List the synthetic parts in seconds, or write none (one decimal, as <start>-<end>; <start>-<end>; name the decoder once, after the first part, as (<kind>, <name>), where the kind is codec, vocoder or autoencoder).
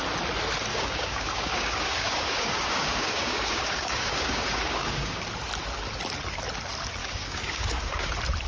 0.7-5.2 (codec, DAC); 7.0-8.1